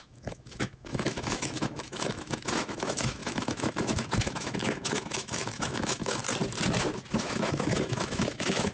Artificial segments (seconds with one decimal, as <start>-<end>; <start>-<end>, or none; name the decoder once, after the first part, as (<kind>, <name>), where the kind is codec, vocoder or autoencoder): 0.0-6.2 (autoencoder, DAC-VAE); 7.2-8.7